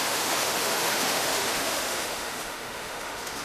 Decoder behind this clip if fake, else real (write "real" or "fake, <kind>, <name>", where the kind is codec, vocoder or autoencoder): fake, autoencoder, DAC-VAE